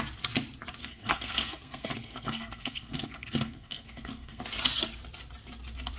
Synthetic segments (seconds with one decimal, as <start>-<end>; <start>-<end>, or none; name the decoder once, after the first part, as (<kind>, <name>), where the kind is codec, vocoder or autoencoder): 0.8-4.4 (codec, SNAC)